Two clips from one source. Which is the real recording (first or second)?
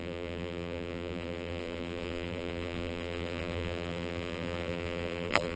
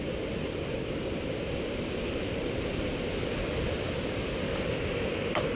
second